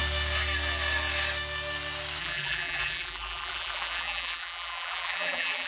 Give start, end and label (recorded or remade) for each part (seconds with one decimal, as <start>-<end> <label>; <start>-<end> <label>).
0.0-2.2 recorded; 2.2-5.7 remade